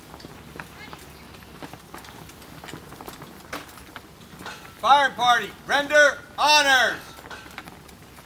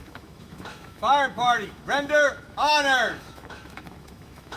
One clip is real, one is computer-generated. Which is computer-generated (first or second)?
second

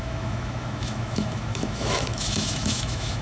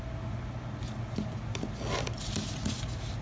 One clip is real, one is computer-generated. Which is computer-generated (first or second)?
first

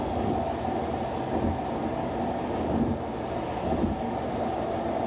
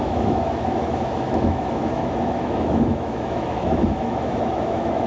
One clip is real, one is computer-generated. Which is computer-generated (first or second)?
second